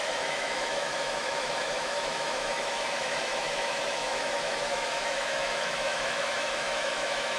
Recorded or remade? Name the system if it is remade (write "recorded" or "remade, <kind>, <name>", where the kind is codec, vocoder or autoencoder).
remade, autoencoder, DAC-VAE